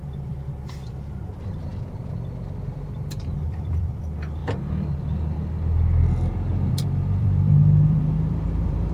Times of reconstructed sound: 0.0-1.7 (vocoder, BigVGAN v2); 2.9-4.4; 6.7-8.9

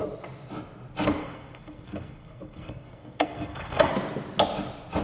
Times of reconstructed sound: 1.2-3.9 (codec, SNAC)

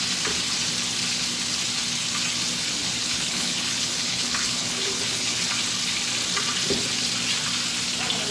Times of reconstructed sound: 2.8-5.4 (codec, HILCodec)

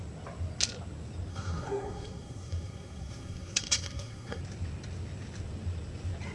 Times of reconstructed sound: 1.3-4.4 (codec, SNAC)